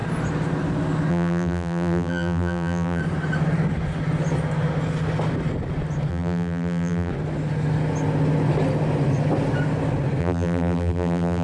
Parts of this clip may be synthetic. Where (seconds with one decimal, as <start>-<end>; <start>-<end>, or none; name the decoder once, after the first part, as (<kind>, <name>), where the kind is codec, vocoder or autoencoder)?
1.1-3.0 (vocoder, BigVGAN v2); 6.1-7.1; 10.2-11.4